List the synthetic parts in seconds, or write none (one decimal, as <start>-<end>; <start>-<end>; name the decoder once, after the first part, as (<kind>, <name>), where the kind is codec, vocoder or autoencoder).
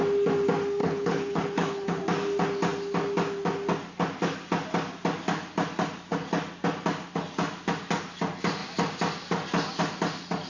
0.8-2.0 (codec, HILCodec)